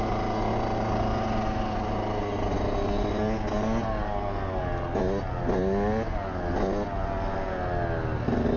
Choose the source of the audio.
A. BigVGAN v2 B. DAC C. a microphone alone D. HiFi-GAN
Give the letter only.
C